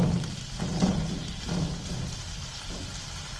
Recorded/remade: recorded